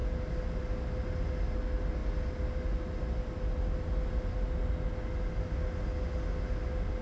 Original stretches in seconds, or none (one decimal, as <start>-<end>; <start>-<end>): 0.0-7.0